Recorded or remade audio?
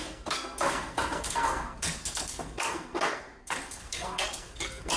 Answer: remade